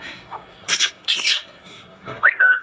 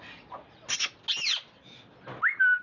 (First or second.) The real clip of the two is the second